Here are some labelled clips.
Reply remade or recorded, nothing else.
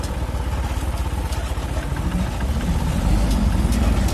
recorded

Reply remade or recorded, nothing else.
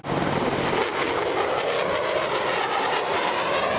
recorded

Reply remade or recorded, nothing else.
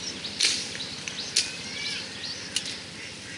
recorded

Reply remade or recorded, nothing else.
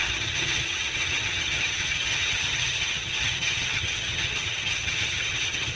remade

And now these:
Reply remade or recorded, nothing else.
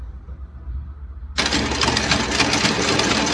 recorded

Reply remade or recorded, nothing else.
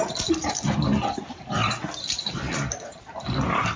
recorded